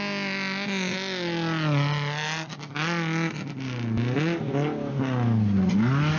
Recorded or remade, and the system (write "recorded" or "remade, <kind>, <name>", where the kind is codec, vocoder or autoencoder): recorded